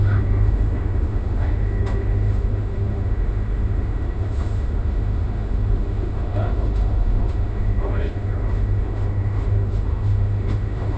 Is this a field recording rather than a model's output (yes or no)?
no